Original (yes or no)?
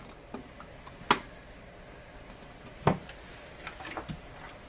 yes